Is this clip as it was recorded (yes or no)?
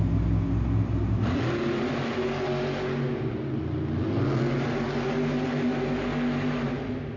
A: yes